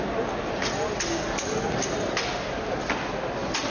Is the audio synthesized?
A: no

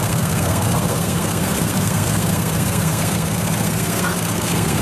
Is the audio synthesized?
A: yes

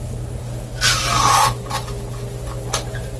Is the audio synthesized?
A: no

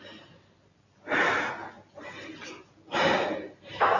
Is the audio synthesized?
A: no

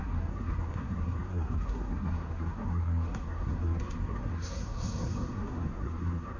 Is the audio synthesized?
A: yes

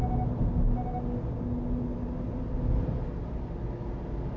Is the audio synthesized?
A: no